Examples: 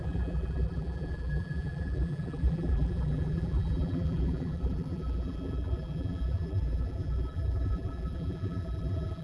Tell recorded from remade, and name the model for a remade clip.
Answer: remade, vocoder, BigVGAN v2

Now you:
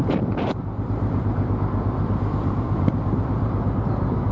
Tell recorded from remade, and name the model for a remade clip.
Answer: remade, vocoder, BigVGAN v2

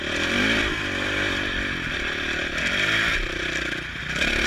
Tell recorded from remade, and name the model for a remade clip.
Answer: remade, vocoder, BigVGAN v2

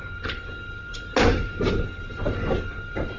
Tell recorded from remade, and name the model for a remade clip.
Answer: recorded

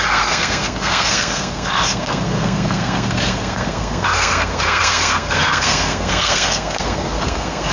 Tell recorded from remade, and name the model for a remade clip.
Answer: remade, codec, SNAC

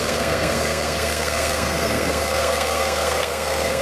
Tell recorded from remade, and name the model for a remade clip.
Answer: remade, codec, SNAC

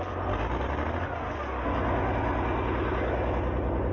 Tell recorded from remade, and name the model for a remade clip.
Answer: recorded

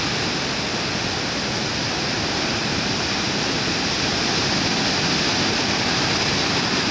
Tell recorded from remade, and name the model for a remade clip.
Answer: recorded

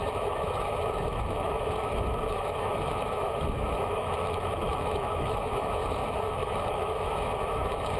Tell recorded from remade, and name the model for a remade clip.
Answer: remade, autoencoder, DAC-VAE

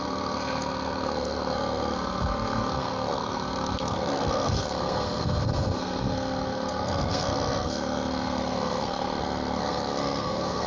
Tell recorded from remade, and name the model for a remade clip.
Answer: remade, codec, SNAC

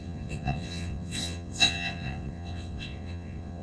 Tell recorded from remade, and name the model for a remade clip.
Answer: remade, vocoder, WaveNeXt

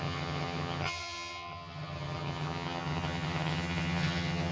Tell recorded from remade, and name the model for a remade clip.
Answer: remade, vocoder, HiFi-GAN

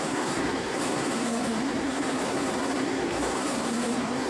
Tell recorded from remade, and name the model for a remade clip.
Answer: remade, codec, SNAC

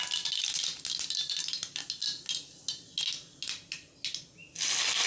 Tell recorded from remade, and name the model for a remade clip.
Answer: recorded